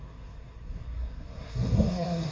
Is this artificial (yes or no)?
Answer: yes